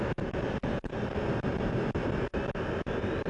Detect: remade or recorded remade